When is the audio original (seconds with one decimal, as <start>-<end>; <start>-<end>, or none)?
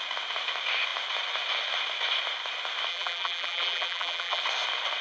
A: 0.0-2.9; 4.4-5.0